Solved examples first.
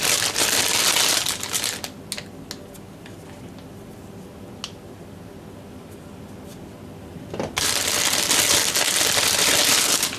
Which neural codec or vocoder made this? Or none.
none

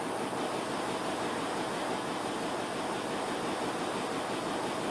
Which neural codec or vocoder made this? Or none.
none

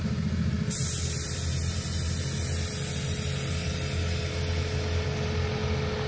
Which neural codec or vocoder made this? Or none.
none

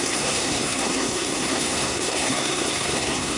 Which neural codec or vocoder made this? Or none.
codec, SNAC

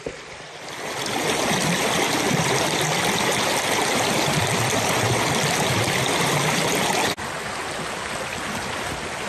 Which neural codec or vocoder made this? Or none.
none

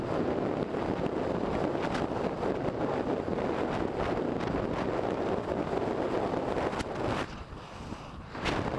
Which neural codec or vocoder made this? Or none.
none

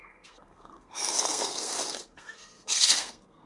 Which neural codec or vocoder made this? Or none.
codec, SNAC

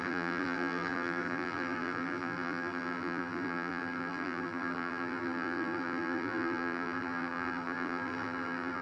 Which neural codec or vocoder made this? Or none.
vocoder, BigVGAN v2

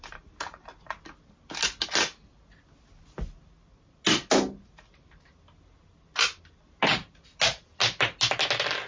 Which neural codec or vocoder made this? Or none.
none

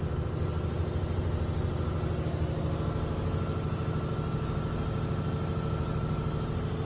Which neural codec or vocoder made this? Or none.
none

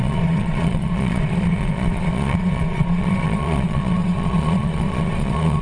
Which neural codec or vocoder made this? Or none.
vocoder, Vocos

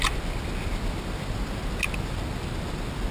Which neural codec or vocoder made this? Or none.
none